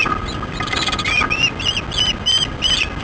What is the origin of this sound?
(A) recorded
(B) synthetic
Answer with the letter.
A